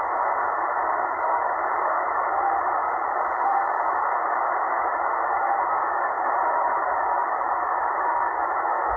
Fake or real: fake